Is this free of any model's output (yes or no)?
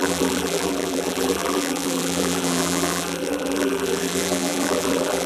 no